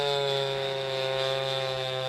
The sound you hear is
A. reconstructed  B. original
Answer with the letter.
A